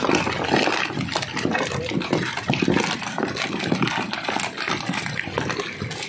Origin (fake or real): real